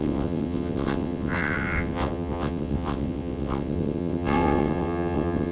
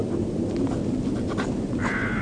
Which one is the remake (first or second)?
first